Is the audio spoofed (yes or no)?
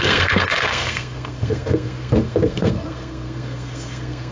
yes